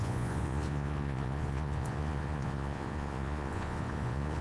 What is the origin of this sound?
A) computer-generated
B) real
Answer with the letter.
A